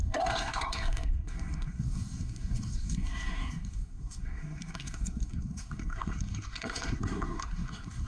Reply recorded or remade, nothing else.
remade